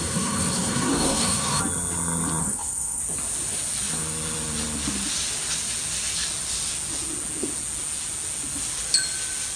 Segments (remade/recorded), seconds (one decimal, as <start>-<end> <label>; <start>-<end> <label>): 0.0-1.6 remade; 1.6-2.4 recorded; 2.4-3.0 remade; 3.0-9.6 recorded